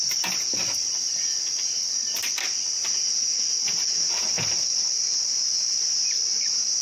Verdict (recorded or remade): recorded